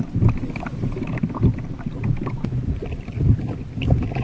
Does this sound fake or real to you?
real